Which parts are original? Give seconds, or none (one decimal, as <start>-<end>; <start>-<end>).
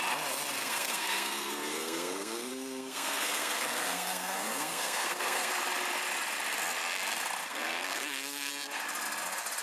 0.0-0.6; 5.5-7.4; 8.5-9.6